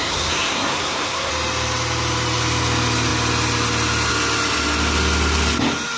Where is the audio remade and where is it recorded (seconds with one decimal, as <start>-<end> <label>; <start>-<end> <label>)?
0.0-1.3 remade; 1.3-6.0 recorded